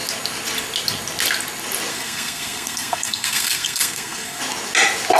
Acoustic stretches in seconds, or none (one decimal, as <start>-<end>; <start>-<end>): 0.0-1.9; 4.4-5.2